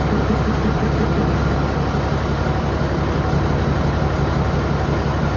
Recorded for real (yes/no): no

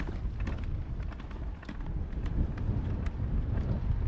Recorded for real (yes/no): yes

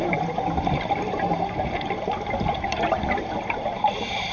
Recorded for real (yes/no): no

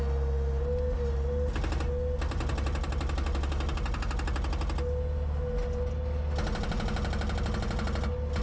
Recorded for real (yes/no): yes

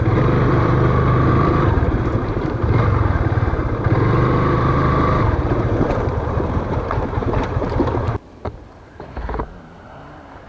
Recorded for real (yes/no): no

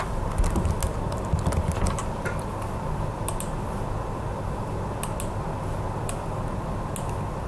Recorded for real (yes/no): yes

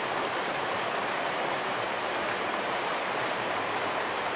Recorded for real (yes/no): no